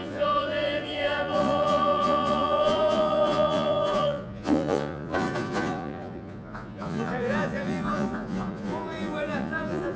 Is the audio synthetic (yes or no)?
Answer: yes